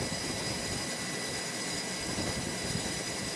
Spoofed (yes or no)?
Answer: no